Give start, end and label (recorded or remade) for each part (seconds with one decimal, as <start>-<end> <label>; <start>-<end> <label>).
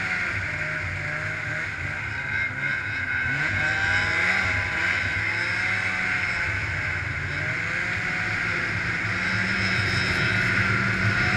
0.0-2.7 recorded; 2.7-3.6 remade; 3.6-11.4 recorded